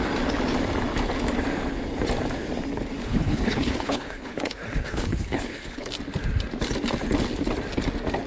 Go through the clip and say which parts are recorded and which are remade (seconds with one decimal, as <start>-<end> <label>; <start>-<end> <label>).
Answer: 0.0-3.0 recorded; 3.0-5.9 remade; 5.9-8.3 recorded